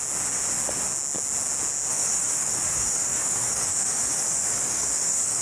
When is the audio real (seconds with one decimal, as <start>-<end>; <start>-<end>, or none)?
0.0-1.9